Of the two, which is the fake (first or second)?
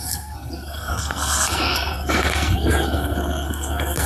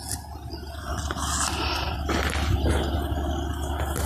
first